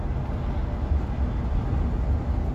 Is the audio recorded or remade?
recorded